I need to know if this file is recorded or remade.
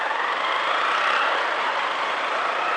remade